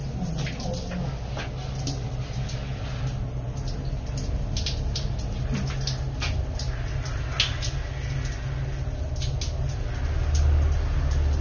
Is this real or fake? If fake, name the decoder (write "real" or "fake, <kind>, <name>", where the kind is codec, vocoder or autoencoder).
real